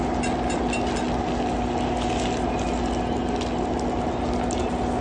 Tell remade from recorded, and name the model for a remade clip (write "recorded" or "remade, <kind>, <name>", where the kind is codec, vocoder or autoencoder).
recorded